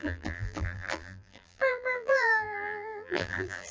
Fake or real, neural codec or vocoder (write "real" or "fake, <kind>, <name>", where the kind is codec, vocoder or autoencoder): fake, vocoder, BigVGAN v2